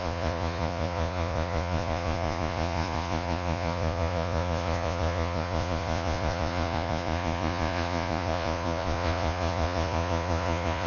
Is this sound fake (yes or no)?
yes